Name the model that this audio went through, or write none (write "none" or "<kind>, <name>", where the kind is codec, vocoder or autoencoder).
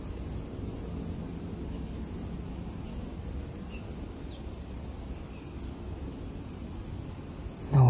none